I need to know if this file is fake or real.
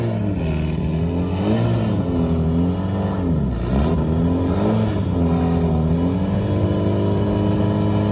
real